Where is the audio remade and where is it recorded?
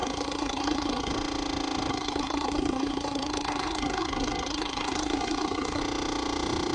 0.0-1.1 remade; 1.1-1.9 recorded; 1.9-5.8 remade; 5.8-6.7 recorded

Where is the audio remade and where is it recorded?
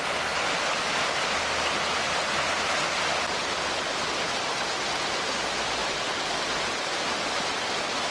0.0-8.1 recorded